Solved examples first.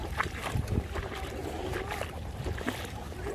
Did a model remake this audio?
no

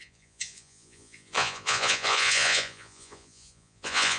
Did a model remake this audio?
yes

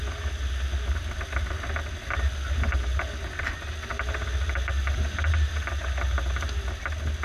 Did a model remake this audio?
no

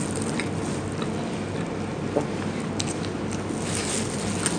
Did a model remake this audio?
no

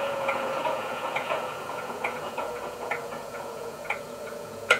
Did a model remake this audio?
yes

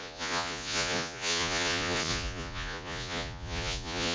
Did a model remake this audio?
yes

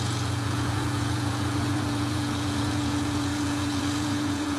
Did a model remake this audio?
yes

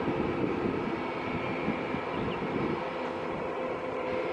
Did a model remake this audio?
no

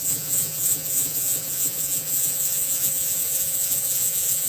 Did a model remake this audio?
yes